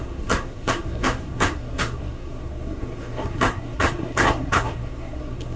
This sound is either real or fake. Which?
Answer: fake